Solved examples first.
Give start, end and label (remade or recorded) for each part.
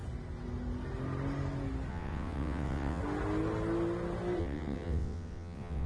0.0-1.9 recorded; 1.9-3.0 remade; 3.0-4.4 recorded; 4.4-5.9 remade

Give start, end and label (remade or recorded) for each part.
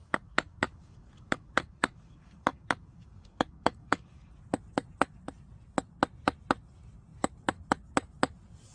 0.0-4.3 remade; 4.3-8.7 recorded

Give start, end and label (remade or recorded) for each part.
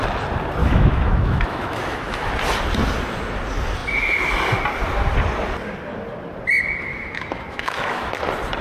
0.0-0.6 recorded; 0.6-2.3 remade; 2.3-6.9 recorded; 6.9-8.1 remade; 8.1-8.6 recorded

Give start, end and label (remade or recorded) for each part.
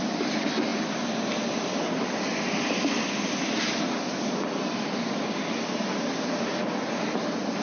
0.0-7.6 recorded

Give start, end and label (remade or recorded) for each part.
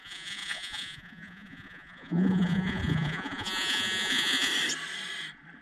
0.0-4.5 remade; 4.5-5.6 recorded